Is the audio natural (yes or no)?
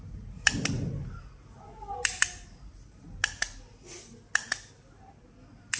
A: yes